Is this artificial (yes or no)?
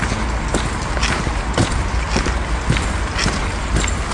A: no